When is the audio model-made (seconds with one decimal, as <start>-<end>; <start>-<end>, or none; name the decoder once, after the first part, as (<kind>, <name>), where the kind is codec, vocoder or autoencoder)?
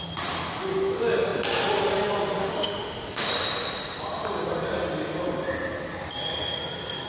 2.4-3.3 (autoencoder, DAC-VAE)